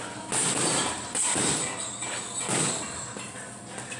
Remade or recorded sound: recorded